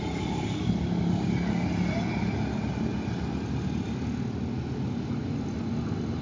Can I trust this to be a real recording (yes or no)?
yes